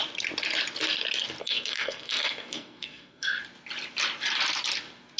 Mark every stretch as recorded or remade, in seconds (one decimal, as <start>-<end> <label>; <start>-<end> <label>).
0.0-1.4 recorded; 1.4-3.4 remade; 3.4-5.2 recorded